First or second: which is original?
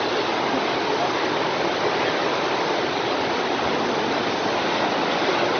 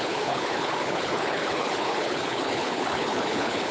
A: first